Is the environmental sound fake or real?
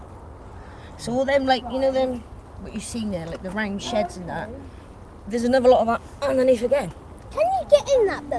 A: real